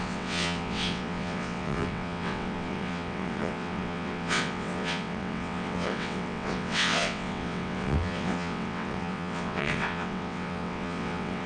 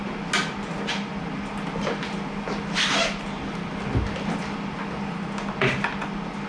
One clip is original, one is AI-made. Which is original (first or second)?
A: second